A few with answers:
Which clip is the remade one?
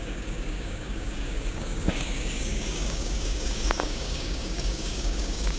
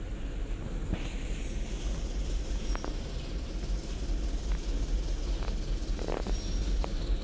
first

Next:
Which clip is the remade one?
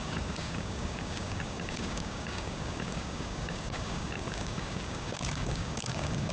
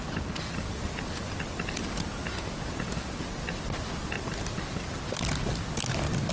first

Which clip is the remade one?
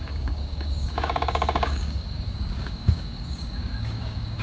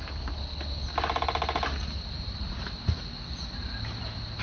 first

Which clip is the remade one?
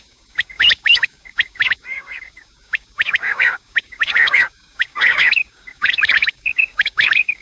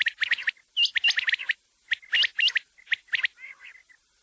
first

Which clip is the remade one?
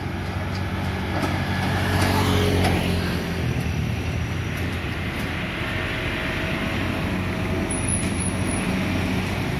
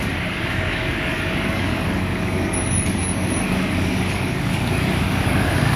second